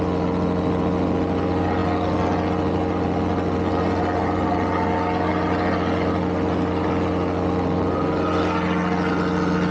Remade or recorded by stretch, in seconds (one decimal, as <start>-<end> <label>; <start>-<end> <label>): 0.0-9.7 recorded